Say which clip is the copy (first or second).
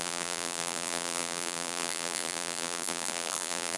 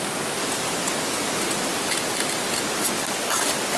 first